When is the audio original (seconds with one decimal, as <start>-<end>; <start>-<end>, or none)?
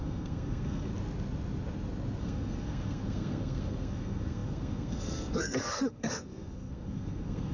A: 0.9-2.2